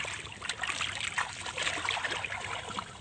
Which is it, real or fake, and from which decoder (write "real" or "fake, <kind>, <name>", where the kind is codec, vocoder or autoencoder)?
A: real